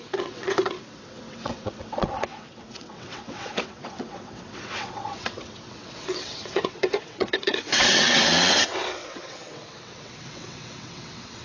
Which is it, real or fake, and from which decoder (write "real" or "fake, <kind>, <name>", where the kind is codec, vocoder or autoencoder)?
fake, vocoder, WaveNeXt